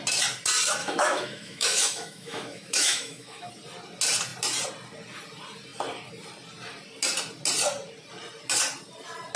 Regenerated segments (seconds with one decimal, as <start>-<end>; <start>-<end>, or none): 0.8-3.5